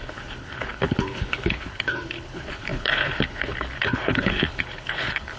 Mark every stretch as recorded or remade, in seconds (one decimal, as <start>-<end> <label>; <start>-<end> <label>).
0.0-5.4 remade